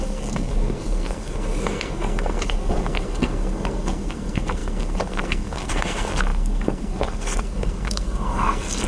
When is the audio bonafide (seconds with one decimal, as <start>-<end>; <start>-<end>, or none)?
none